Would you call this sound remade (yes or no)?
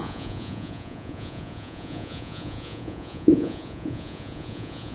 yes